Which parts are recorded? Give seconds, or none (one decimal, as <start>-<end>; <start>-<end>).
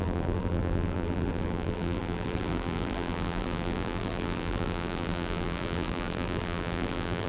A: none